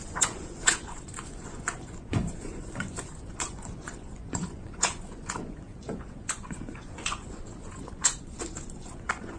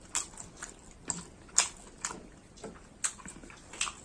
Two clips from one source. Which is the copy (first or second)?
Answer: first